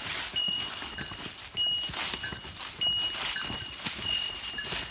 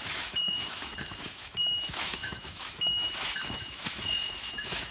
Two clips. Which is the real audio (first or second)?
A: first